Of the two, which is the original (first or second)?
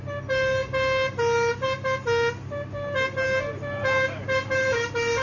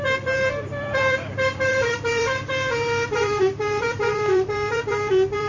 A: first